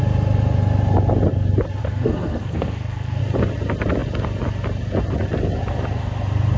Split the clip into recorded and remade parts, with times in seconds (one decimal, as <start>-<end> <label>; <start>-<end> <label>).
0.0-1.8 recorded; 1.8-3.2 remade; 3.2-6.6 recorded